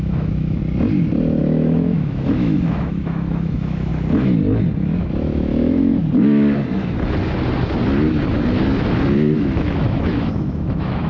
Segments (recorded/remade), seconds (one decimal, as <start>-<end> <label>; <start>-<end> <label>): 0.0-0.6 remade; 0.6-1.4 recorded; 1.4-3.9 remade; 3.9-5.0 recorded; 5.0-6.0 remade; 6.0-9.4 recorded; 9.4-11.1 remade

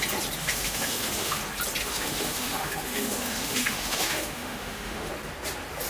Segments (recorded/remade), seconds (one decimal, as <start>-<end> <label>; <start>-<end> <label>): 0.0-0.4 recorded; 0.4-1.4 remade; 1.4-1.8 recorded; 1.8-5.1 remade; 5.1-5.9 recorded

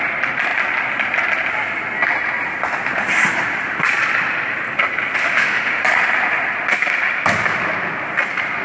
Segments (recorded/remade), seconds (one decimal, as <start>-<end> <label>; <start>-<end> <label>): 0.0-5.2 recorded; 5.2-5.8 remade; 5.8-8.6 recorded

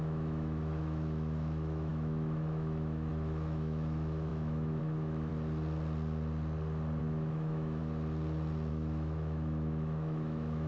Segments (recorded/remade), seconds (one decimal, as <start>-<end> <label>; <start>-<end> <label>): 0.0-5.3 remade; 5.3-7.0 recorded; 7.0-7.8 remade; 7.8-8.7 recorded; 8.7-10.7 remade